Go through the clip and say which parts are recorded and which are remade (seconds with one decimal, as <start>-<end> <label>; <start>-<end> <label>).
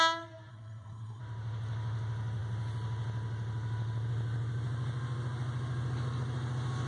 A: 0.0-0.5 recorded; 0.5-1.2 remade; 1.2-6.9 recorded